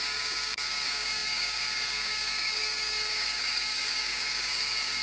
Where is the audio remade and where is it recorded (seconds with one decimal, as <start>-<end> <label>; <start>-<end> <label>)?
0.0-5.0 remade